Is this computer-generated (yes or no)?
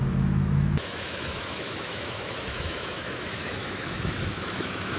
yes